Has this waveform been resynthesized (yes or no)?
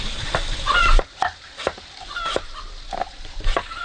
no